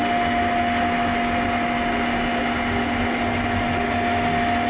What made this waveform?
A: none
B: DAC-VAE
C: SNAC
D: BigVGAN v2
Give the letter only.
A